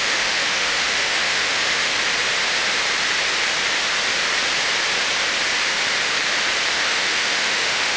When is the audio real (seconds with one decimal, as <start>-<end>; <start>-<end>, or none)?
1.9-6.7